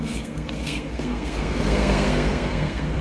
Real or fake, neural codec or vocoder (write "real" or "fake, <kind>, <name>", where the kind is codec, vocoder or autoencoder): fake, codec, SNAC